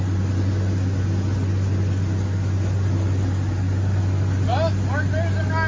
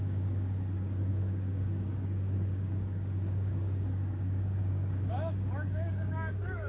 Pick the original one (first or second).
first